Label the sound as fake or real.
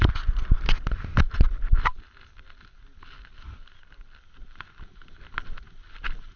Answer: real